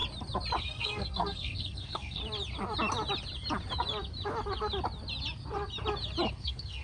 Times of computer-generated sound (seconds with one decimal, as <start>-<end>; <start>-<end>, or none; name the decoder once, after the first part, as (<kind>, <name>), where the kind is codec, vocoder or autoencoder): 0.6-2.2 (codec, SNAC); 6.3-6.8